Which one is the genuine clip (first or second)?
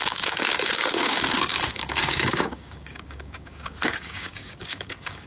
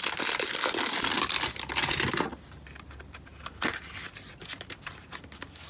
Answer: second